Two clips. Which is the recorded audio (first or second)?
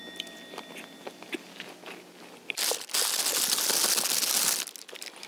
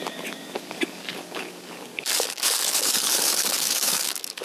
first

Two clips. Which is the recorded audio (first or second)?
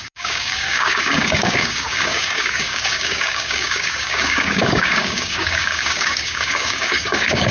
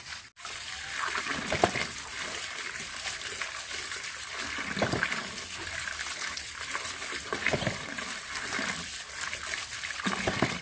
second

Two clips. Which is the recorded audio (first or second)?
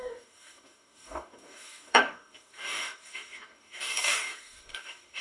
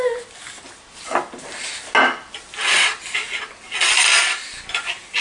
second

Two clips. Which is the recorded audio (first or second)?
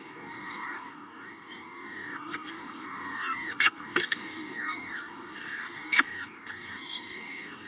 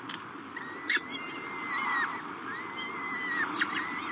second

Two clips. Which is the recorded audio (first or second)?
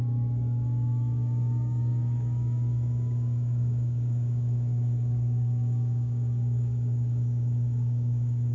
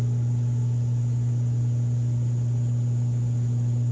second